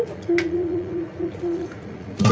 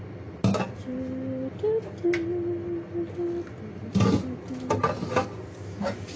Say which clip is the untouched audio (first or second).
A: second